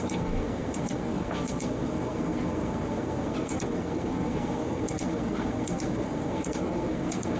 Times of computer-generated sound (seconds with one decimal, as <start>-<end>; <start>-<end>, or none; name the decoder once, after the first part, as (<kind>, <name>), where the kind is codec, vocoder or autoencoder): 0.0-7.4 (codec, SNAC)